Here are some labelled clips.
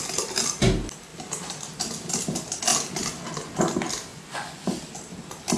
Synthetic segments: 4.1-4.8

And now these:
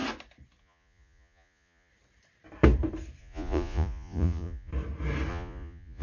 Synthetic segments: 0.6-1.9; 3.2-4.7; 5.3-6.0

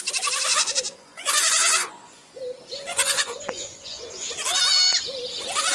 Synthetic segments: 0.5-2.4; 2.9-4.3